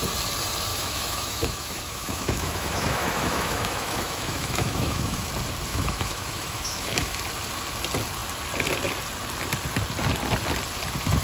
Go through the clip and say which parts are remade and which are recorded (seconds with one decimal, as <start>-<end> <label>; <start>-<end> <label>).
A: 0.0-0.7 recorded; 0.7-5.3 remade; 5.3-5.7 recorded; 5.7-7.2 remade; 7.2-11.2 recorded